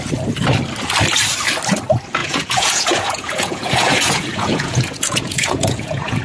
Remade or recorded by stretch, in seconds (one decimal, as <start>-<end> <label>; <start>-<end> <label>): 0.0-2.2 recorded; 2.2-6.2 remade